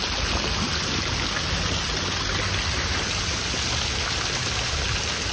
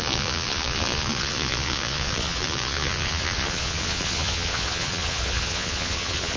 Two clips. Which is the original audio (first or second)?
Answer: first